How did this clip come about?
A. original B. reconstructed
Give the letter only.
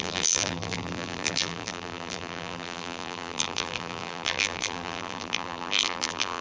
B